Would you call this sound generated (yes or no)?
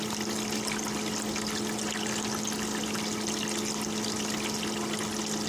no